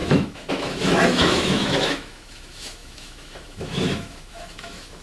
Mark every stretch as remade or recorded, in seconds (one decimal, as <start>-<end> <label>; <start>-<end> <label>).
0.0-5.0 remade